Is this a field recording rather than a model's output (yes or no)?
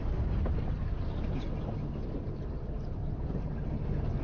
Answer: yes